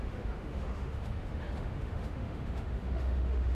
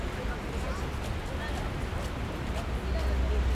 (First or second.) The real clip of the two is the second